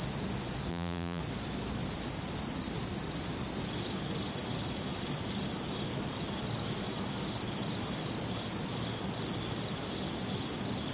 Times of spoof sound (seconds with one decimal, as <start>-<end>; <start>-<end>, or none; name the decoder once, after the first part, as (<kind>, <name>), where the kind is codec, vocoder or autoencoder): 0.7-1.2 (vocoder, BigVGAN v2)